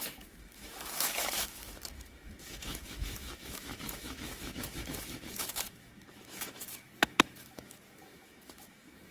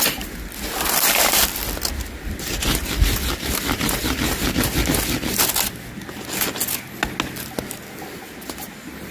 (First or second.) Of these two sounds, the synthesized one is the first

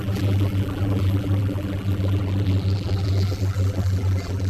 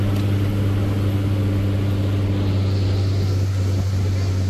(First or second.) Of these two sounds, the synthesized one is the first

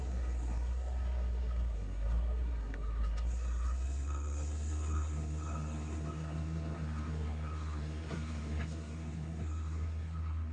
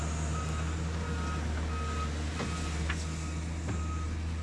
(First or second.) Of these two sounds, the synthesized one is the first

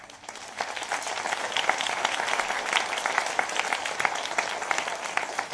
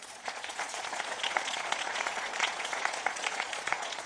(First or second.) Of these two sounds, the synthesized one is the second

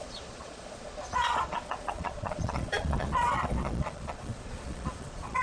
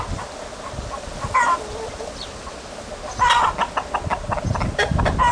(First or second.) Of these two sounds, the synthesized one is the first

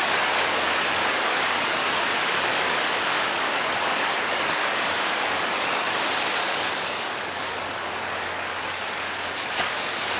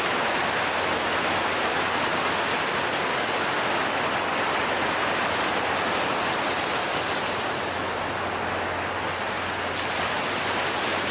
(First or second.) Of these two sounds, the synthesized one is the first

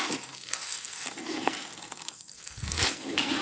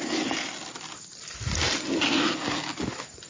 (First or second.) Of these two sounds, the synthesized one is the first